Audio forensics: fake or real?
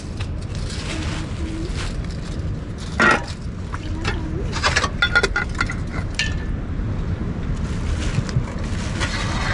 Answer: real